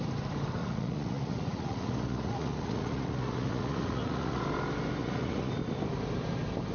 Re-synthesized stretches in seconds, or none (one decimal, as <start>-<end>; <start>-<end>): 0.6-4.4; 5.0-5.5